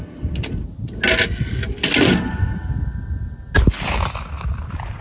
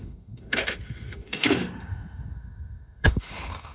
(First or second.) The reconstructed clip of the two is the second